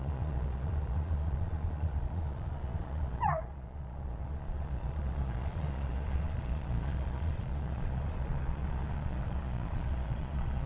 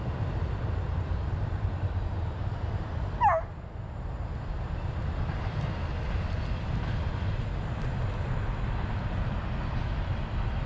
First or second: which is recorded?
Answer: second